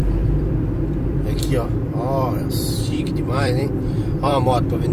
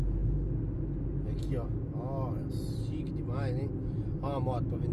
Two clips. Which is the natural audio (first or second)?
second